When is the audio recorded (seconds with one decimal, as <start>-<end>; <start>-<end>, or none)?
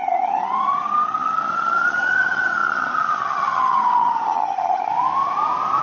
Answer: 4.9-5.8